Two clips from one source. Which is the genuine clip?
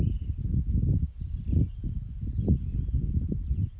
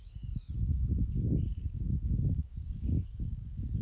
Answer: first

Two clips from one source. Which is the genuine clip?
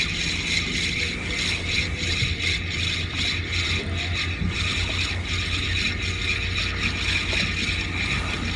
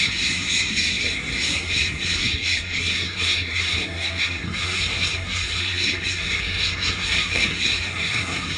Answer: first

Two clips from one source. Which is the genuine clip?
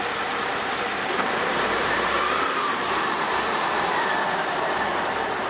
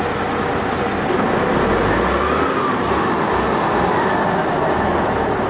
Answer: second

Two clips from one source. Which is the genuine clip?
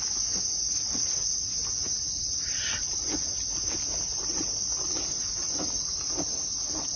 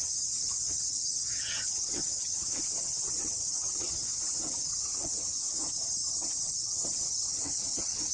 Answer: first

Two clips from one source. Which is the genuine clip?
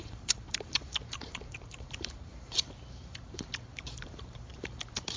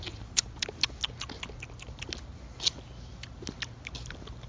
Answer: second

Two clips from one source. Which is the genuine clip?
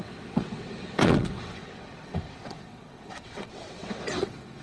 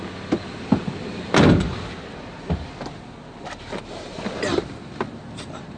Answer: second